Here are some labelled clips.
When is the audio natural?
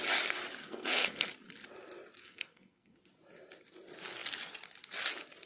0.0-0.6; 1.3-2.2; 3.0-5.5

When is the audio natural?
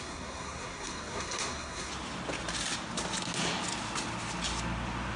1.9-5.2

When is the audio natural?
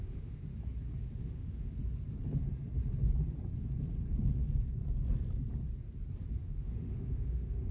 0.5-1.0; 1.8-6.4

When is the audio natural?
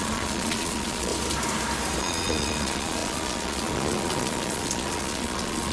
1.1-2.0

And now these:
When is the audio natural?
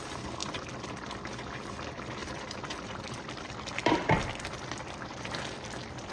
0.0-0.4; 0.9-2.2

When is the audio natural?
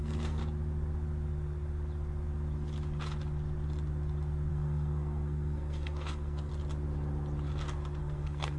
0.4-4.5; 6.5-8.0